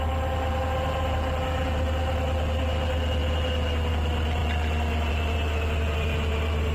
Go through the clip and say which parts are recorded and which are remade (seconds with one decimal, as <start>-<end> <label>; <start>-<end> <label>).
0.0-6.7 recorded